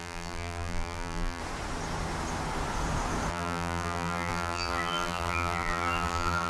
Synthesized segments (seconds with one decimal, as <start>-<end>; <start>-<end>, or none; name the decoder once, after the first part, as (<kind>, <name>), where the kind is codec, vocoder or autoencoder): 0.0-1.4 (vocoder, BigVGAN v2); 3.3-6.5